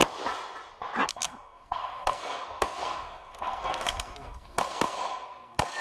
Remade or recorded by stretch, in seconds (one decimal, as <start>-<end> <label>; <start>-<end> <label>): 0.0-1.1 recorded; 1.1-5.8 remade